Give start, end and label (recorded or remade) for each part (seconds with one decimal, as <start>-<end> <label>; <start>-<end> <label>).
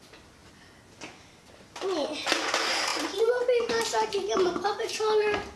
0.0-5.6 recorded